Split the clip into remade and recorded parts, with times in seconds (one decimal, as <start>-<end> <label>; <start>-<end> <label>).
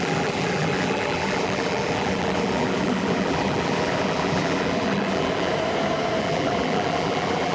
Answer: 0.0-5.5 remade; 5.5-6.2 recorded; 6.2-7.5 remade